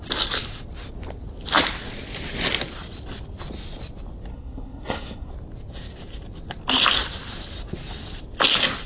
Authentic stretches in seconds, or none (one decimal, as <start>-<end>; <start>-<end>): 0.0-4.3; 5.3-8.9